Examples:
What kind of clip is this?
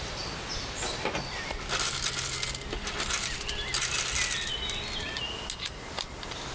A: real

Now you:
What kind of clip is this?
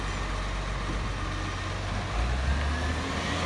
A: real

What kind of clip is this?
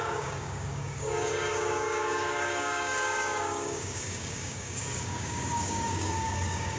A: fake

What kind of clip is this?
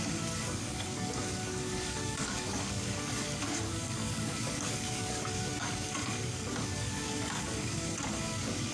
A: fake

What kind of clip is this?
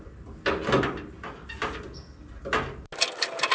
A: real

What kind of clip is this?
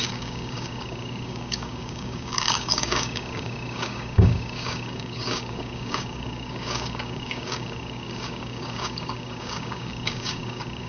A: fake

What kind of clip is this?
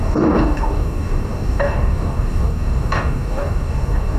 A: fake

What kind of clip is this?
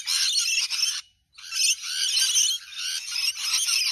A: real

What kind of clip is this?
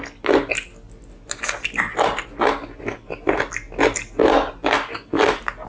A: real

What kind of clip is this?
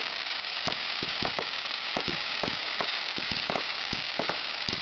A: fake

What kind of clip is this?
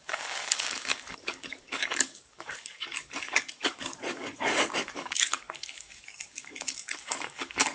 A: fake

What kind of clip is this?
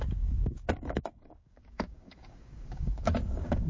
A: fake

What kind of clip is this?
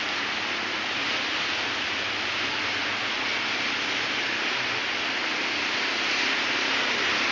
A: real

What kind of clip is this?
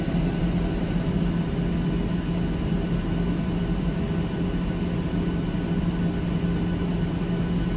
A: real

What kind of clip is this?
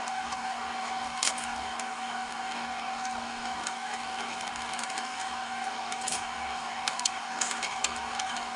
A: fake